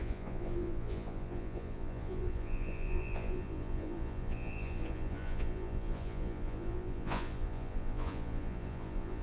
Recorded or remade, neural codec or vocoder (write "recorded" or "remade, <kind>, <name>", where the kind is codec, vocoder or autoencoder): remade, vocoder, Vocos